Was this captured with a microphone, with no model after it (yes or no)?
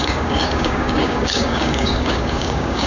no